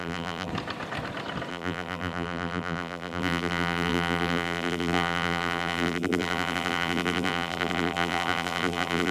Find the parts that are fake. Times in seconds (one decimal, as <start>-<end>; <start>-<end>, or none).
0.0-0.5; 1.5-9.1